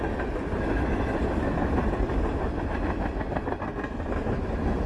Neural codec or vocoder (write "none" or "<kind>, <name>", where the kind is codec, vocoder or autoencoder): none